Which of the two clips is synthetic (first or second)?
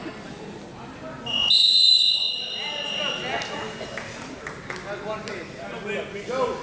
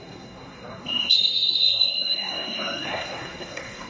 second